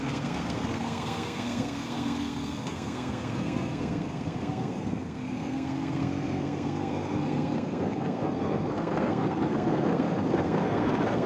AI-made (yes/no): yes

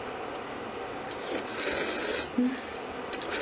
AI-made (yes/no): no